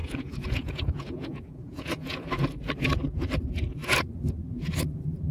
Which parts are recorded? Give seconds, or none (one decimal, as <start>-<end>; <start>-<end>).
2.3-5.3